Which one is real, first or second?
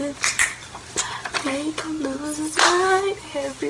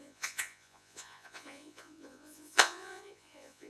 first